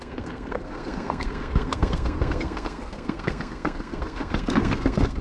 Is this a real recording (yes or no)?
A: no